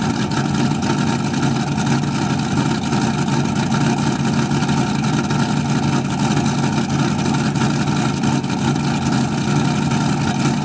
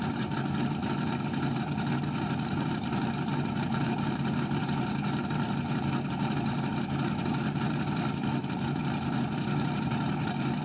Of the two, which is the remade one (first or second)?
second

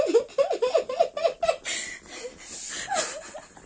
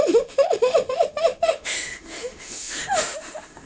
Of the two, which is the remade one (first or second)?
second